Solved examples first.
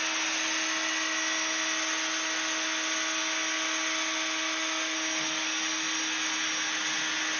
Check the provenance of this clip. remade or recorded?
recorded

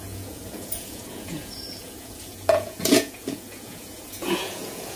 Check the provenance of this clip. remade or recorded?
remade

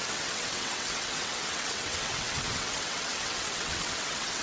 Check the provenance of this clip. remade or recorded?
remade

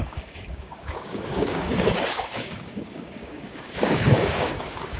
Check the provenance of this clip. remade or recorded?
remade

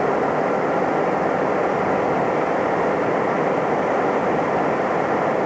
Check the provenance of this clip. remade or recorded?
recorded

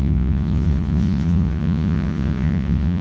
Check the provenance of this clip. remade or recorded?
remade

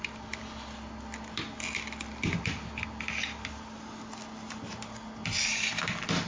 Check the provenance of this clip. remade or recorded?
recorded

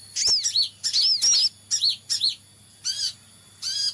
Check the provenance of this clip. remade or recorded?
recorded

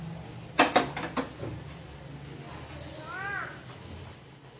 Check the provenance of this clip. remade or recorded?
recorded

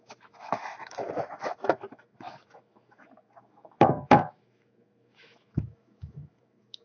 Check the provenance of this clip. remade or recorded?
remade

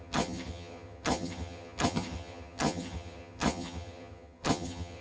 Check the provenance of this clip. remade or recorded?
remade